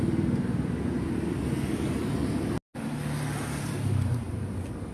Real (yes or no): yes